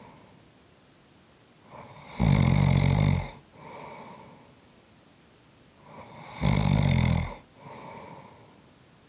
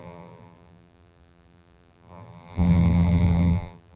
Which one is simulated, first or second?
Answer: second